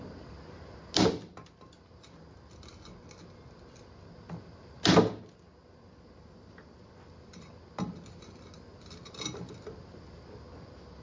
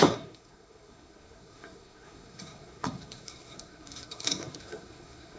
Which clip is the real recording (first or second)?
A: first